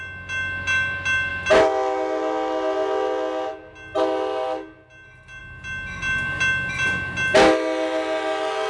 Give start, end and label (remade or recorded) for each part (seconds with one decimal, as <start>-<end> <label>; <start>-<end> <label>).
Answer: 0.0-8.7 recorded